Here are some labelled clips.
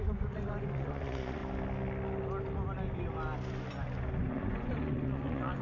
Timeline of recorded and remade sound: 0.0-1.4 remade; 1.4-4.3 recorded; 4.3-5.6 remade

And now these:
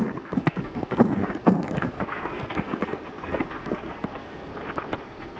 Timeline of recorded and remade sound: 0.0-4.5 remade; 4.5-5.0 recorded; 5.0-5.4 remade